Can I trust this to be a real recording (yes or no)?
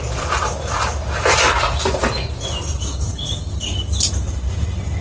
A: yes